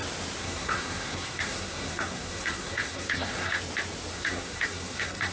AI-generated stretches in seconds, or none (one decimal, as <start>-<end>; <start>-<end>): 0.4-3.6; 4.1-5.3